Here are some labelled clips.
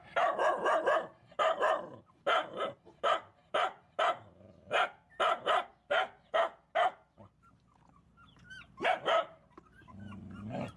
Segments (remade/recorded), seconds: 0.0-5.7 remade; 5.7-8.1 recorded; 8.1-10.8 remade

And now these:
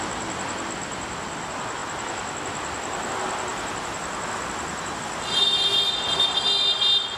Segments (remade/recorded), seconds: 0.0-7.2 recorded